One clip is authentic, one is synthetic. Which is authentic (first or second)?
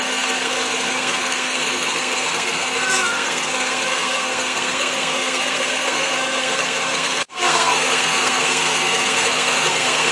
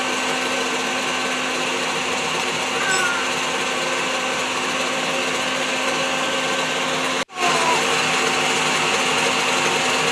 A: second